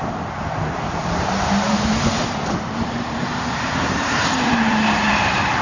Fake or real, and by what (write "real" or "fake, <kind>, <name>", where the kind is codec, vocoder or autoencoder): fake, vocoder, BigVGAN v2